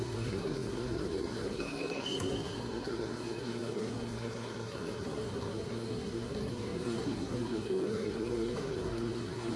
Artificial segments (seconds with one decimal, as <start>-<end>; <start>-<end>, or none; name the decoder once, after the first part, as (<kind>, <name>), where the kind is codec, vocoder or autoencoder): 0.0-9.6 (codec, SNAC)